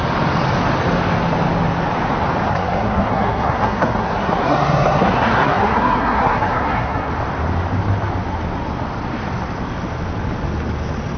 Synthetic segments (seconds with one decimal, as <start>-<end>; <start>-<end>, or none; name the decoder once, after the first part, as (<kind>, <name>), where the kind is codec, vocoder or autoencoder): 2.5-7.1 (codec, SNAC)